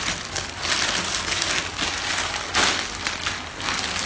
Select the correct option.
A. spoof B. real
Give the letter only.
B